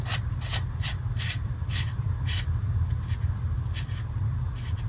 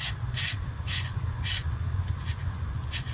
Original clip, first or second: first